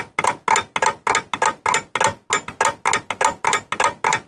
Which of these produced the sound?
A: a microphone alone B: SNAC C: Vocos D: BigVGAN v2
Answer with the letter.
A